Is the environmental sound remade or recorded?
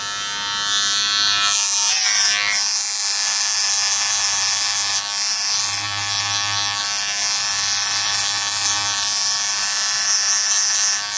recorded